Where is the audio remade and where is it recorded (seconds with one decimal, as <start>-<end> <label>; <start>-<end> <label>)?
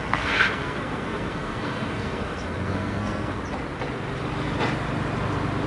0.0-3.4 remade; 3.4-5.7 recorded